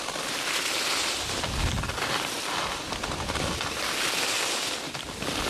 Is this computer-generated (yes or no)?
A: no